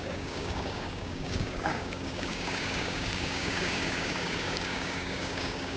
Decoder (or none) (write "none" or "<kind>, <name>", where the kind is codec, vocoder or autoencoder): codec, DAC